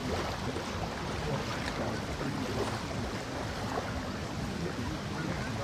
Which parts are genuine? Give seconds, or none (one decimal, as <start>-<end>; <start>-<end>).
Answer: 0.0-5.6